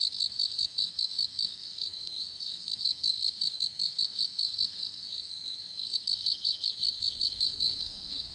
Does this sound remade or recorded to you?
remade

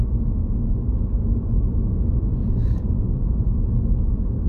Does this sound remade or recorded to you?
remade